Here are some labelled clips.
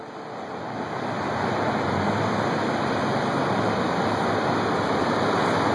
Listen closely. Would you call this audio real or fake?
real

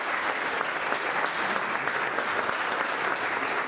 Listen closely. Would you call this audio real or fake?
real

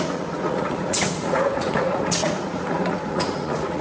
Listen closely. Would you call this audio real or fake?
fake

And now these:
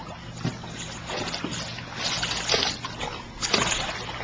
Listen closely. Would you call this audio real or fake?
real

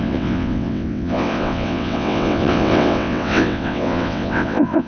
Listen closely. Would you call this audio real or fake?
fake